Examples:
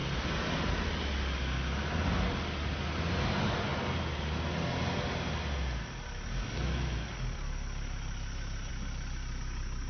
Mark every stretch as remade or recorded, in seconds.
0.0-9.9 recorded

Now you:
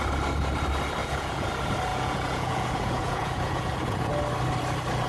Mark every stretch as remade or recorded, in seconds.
0.0-1.0 recorded; 1.0-1.5 remade; 1.5-1.9 recorded; 1.9-4.1 remade; 4.1-5.1 recorded

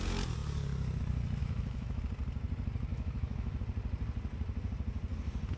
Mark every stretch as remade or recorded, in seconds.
0.0-1.4 recorded; 1.4-2.0 remade; 2.0-2.9 recorded; 2.9-3.6 remade; 3.6-5.6 recorded

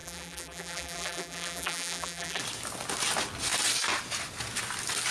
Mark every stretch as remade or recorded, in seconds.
0.0-2.4 remade; 2.4-5.1 recorded